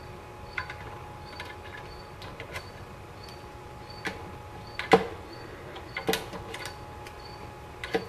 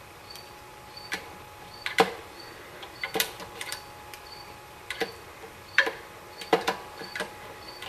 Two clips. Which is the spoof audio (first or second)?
second